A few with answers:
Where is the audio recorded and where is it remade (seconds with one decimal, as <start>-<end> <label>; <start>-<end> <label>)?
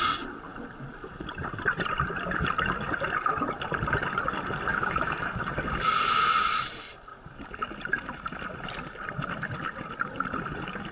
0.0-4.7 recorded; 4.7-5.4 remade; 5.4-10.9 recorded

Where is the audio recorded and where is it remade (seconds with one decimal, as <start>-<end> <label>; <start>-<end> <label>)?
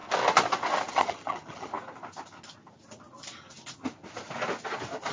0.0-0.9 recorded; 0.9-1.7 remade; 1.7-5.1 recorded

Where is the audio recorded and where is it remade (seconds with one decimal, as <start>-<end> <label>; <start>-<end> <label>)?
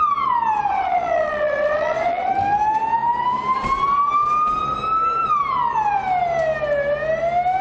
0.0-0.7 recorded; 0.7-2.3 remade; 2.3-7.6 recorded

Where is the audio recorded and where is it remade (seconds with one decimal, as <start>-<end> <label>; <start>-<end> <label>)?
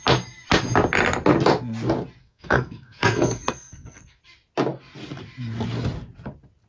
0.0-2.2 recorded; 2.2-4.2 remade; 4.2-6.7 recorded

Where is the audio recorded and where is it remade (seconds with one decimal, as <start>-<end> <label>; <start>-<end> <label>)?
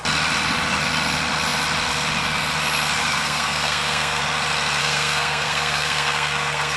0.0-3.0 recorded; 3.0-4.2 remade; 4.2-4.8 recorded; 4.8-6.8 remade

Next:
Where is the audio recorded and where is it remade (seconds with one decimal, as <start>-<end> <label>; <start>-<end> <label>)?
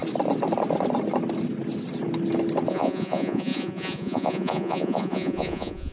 0.0-2.7 recorded; 2.7-5.9 remade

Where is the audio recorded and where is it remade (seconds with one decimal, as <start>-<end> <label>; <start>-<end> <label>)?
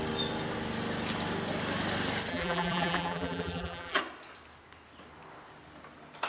0.0-2.3 recorded; 2.3-4.0 remade; 4.0-6.3 recorded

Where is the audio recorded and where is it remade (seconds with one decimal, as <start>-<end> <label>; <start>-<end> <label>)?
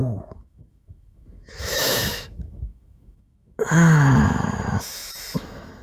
0.0-5.8 remade